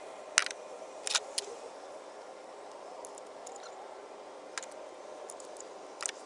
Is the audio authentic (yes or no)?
yes